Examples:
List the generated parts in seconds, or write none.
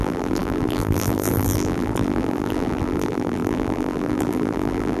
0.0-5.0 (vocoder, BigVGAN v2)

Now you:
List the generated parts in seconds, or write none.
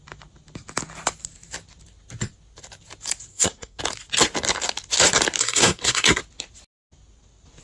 3.3-3.8 (codec, SNAC); 5.4-6.2